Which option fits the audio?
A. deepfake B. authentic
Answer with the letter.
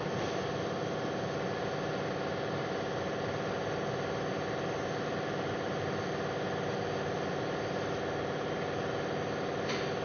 B